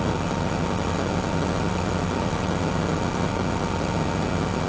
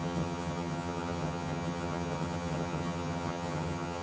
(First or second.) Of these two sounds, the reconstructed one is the second